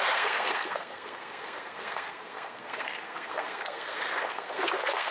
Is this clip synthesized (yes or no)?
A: yes